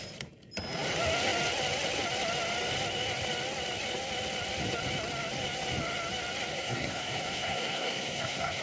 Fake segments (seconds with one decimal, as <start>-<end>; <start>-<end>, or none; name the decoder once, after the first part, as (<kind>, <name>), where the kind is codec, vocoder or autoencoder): 6.5-8.6 (codec, SNAC)